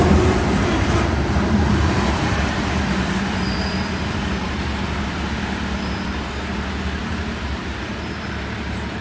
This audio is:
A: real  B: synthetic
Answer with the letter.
B